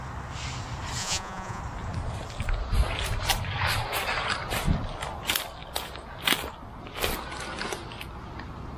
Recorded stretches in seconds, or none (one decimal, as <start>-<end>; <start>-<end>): 0.0-1.0; 1.6-8.8